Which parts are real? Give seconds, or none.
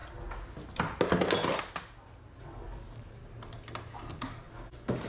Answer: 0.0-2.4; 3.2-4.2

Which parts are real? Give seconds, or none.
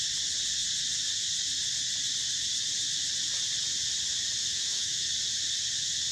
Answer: 0.0-4.4; 5.1-6.1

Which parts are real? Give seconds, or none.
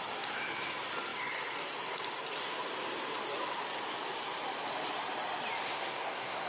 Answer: 0.0-5.6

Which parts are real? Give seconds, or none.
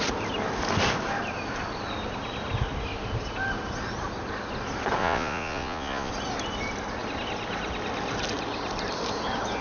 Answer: 0.0-5.0; 6.1-9.6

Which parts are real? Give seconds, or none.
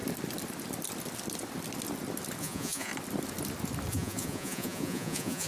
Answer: 0.0-2.4; 2.9-3.9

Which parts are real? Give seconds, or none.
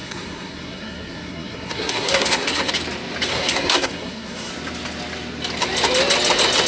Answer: 2.7-3.3; 4.5-6.7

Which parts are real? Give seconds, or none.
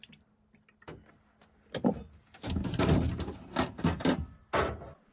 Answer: 0.0-5.1